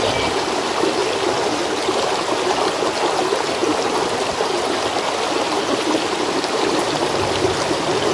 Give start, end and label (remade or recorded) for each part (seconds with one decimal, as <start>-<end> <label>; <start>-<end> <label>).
0.0-8.1 recorded